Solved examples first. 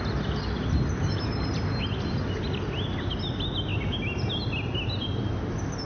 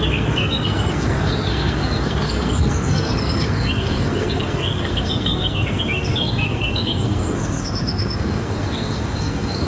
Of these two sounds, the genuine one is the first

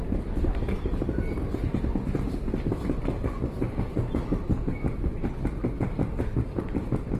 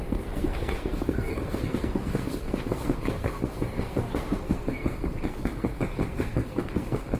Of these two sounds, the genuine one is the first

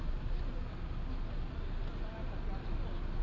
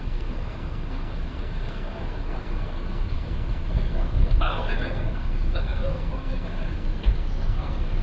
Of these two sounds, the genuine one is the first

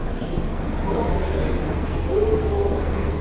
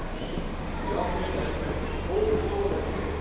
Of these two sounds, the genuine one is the second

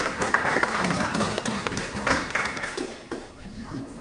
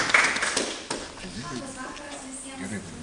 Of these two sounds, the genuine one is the second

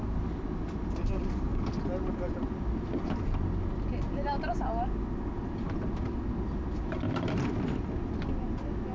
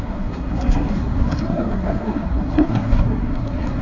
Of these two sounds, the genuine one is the first